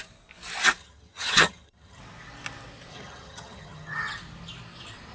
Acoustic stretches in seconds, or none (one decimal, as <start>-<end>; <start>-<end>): 0.0-0.8; 2.0-2.9; 4.1-5.1